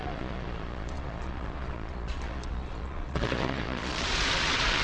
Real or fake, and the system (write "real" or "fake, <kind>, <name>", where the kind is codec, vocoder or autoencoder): fake, vocoder, Vocos